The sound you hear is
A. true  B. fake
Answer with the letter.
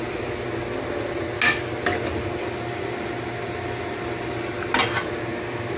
A